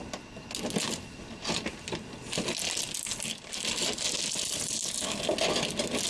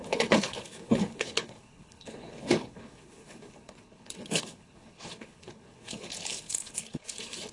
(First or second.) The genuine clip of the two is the first